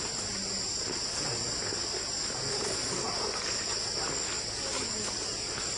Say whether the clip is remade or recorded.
recorded